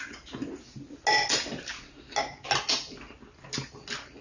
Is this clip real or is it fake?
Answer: real